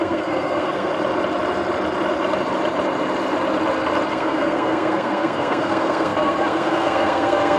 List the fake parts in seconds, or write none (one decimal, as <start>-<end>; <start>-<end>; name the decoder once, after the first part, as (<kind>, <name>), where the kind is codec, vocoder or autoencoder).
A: 0.0-0.9 (codec, SNAC); 4.1-7.6